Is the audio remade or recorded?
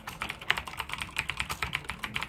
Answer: recorded